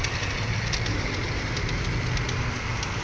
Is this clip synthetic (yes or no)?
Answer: no